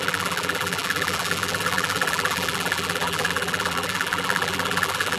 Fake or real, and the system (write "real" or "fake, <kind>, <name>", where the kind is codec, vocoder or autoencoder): fake, vocoder, BigVGAN v2